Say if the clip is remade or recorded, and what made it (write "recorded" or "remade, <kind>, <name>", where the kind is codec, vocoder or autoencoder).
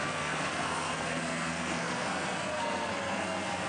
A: remade, codec, SNAC